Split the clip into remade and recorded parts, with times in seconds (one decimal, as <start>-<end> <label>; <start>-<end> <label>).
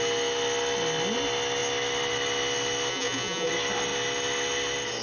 0.0-2.9 recorded; 2.9-3.5 remade; 3.5-5.0 recorded